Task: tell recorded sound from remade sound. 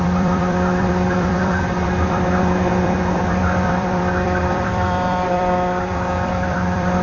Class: remade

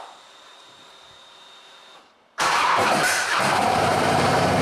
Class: remade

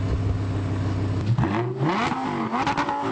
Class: recorded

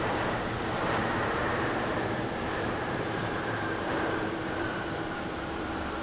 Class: remade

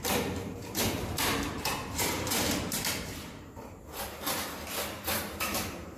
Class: remade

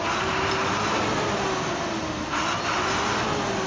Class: recorded